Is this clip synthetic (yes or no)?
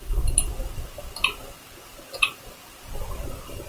no